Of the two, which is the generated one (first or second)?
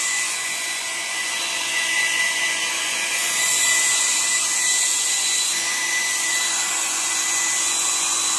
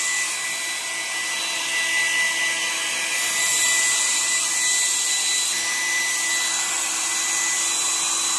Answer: first